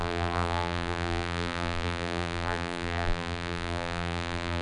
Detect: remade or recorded remade